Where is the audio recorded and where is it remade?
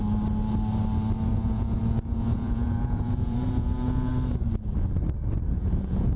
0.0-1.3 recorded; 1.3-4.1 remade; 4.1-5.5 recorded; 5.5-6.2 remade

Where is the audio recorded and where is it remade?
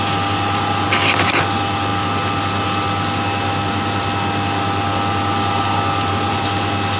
0.0-7.0 recorded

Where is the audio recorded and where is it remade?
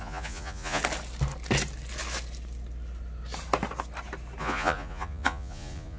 0.0-0.8 remade; 0.8-4.4 recorded; 4.4-6.0 remade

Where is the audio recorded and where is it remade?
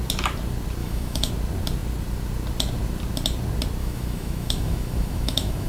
0.0-0.8 recorded; 0.8-1.3 remade; 1.3-3.8 recorded; 3.8-5.7 remade